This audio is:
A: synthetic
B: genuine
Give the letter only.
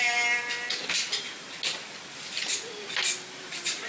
B